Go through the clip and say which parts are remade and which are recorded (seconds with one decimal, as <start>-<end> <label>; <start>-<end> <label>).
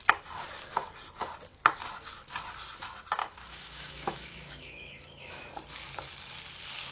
0.0-3.2 recorded; 3.2-5.5 remade; 5.5-6.9 recorded